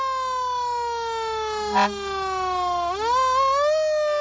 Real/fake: real